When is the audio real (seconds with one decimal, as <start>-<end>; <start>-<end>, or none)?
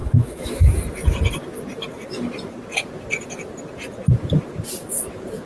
0.8-5.5